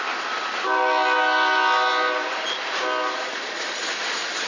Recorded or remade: recorded